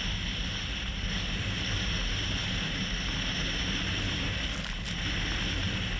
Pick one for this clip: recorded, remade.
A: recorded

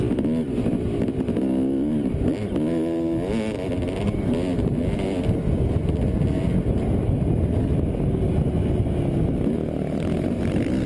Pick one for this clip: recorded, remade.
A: recorded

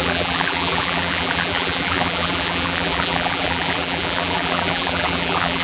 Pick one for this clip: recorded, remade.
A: remade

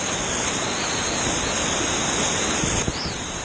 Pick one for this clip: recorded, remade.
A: recorded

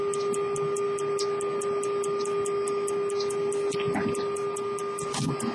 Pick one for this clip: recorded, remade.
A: recorded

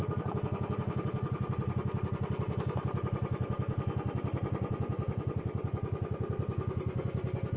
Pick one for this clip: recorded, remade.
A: recorded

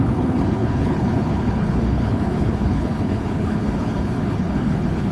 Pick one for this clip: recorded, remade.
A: remade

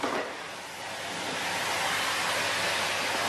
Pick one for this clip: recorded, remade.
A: recorded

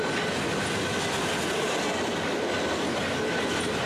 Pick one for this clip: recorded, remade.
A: recorded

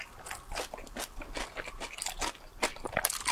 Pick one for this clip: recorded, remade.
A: recorded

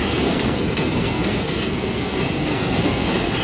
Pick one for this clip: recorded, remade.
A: remade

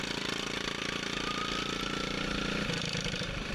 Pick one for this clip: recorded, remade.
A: recorded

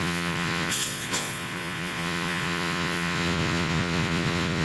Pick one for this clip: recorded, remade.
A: remade